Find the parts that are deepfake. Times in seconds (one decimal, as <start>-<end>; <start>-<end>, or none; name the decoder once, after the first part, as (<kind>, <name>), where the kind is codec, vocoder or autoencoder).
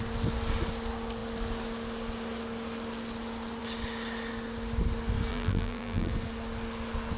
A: 5.3-6.1 (vocoder, BigVGAN v2)